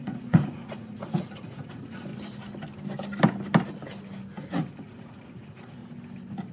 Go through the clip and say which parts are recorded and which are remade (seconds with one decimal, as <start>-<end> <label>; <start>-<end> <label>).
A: 0.0-2.1 remade; 2.1-4.5 recorded; 4.5-5.8 remade; 5.8-6.5 recorded